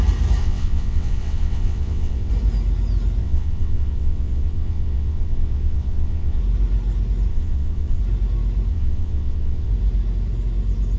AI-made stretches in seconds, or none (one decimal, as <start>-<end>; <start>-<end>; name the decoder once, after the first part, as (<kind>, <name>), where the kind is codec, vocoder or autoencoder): 0.4-2.3 (vocoder, WaveNeXt); 3.2-6.4; 7.3-8.0; 8.7-9.7